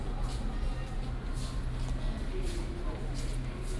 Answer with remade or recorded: recorded